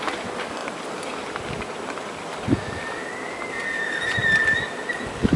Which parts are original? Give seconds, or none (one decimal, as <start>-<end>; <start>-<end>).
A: 0.0-5.4